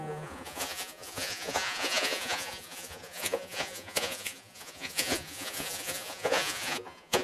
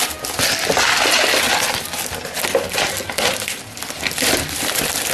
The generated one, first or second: first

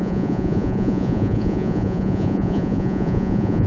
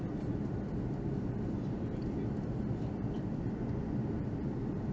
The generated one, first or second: first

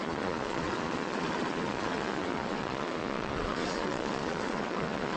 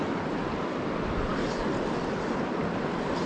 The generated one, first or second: first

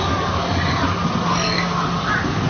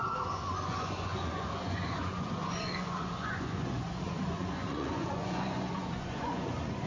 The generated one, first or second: second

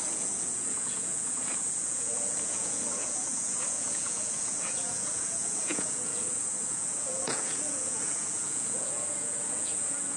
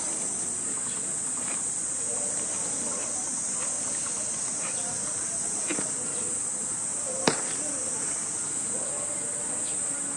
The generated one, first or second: first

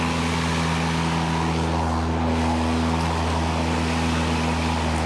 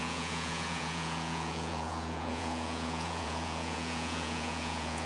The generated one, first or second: second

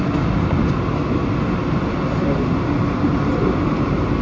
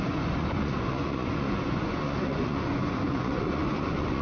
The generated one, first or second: second